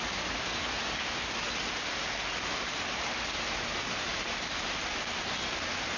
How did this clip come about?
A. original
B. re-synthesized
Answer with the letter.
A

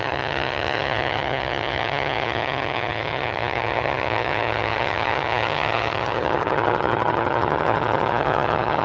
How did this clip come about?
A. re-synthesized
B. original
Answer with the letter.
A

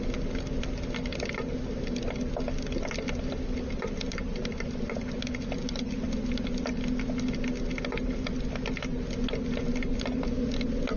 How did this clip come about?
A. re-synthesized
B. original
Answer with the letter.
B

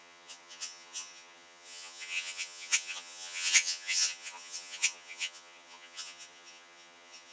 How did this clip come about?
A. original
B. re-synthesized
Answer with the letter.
B